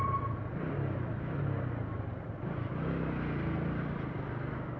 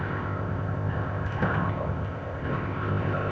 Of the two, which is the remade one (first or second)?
second